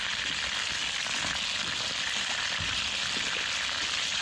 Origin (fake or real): real